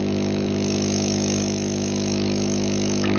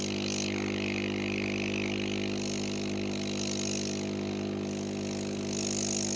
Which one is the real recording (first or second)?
second